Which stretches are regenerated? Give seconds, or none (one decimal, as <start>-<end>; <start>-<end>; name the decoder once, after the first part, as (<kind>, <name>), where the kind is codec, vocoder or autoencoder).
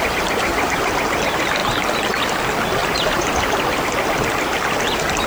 2.8-3.3 (vocoder, BigVGAN v2)